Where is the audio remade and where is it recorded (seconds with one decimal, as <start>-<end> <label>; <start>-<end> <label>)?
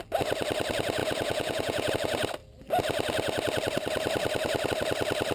0.0-1.0 recorded; 1.0-1.9 remade; 1.9-5.3 recorded